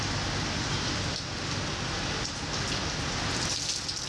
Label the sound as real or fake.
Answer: real